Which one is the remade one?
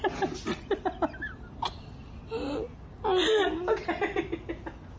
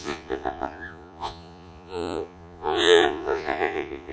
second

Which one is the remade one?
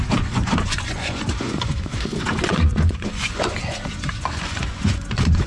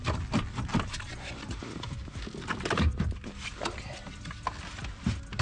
first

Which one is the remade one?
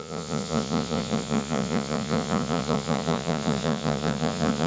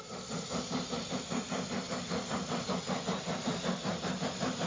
first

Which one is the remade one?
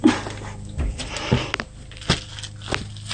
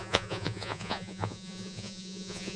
second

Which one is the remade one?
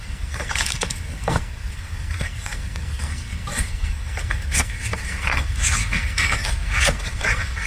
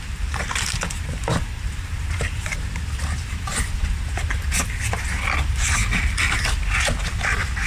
first